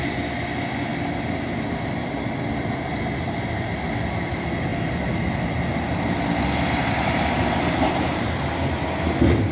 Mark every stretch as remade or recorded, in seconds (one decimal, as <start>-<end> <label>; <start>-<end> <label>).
0.0-4.7 recorded; 4.7-6.1 remade; 6.1-6.8 recorded; 6.8-8.3 remade; 8.3-9.5 recorded